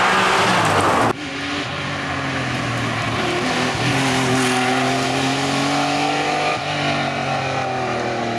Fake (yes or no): no